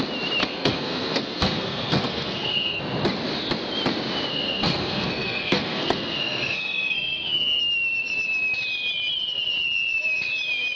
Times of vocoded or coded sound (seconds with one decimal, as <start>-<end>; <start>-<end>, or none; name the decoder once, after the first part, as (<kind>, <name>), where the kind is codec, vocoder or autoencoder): 0.4-2.8 (codec, SNAC); 4.3-7.6

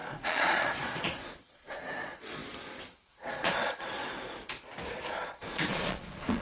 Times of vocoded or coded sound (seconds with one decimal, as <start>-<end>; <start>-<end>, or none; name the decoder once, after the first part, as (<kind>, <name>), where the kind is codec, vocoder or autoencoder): 0.0-2.4 (vocoder, Vocos); 3.1-4.0; 5.0-6.4